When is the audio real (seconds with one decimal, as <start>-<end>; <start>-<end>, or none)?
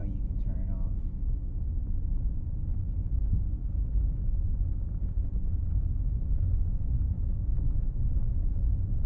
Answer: 1.6-9.1